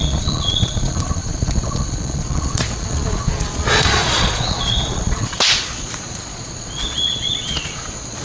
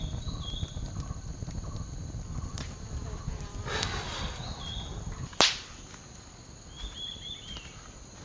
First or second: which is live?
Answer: second